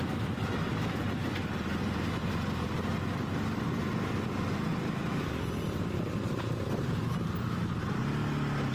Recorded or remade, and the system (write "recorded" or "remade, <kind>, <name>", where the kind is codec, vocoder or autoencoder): recorded